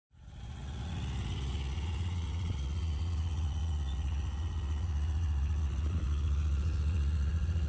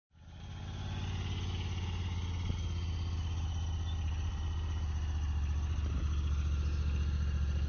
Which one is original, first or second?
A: second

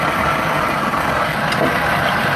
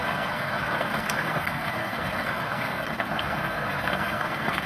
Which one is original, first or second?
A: first